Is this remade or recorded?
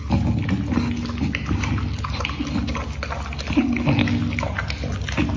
recorded